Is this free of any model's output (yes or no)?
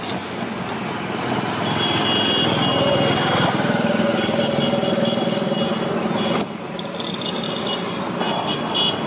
yes